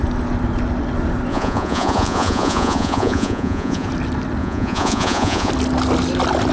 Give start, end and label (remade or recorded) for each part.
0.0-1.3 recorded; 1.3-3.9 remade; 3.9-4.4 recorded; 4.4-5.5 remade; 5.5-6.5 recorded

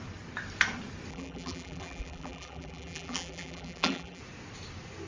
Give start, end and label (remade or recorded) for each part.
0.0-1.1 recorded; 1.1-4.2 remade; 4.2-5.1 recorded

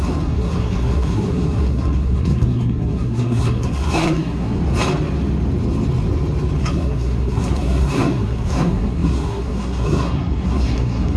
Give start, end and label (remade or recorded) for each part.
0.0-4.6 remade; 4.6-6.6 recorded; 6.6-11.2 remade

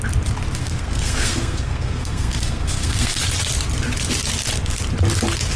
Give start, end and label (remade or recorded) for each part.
0.0-0.6 recorded; 0.6-3.2 remade; 3.2-5.6 recorded

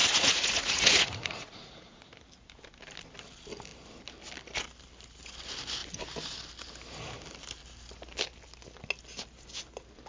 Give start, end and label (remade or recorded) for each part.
0.0-2.1 remade; 2.1-10.1 recorded

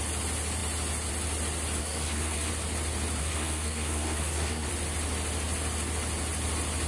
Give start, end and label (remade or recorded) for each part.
0.0-1.8 recorded; 1.8-2.5 remade; 2.5-3.2 recorded; 3.2-4.7 remade; 4.7-6.9 recorded

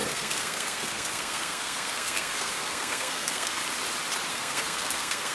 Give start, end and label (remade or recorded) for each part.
0.0-3.6 remade; 3.6-4.3 recorded; 4.3-5.3 remade

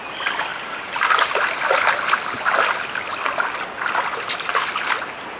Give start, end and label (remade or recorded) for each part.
0.0-0.5 recorded; 0.5-1.3 remade; 1.3-5.4 recorded